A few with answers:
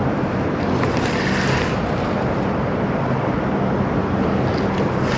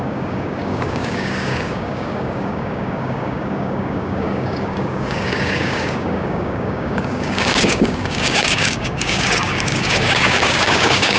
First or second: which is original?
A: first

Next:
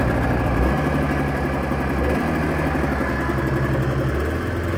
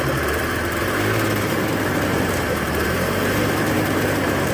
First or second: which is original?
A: first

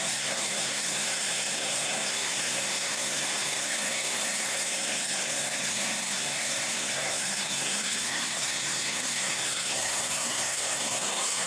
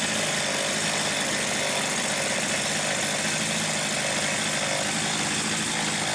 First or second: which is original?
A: second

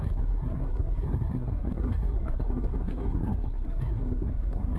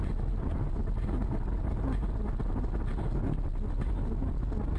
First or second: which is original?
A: second